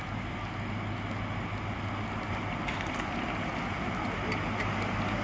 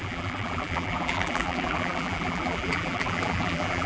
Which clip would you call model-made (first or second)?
second